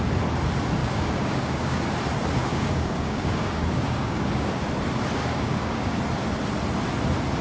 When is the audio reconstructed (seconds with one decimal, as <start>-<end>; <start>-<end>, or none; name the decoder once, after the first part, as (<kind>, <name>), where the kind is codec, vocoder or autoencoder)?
0.8-1.8 (codec, DAC); 2.4-4.7; 5.2-6.0